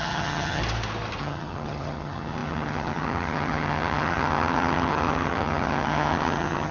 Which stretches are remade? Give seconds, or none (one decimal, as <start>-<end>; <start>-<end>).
0.0-0.6; 1.2-6.7